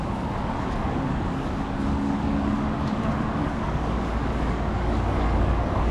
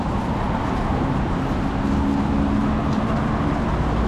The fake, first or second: first